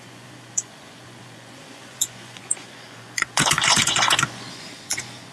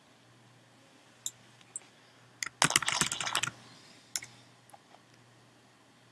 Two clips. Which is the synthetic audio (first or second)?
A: first